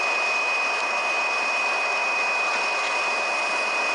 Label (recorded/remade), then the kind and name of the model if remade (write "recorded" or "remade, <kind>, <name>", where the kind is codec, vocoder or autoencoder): recorded